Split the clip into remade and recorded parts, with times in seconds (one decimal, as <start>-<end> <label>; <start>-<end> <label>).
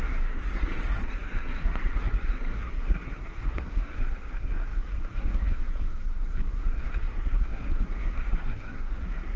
0.0-9.4 remade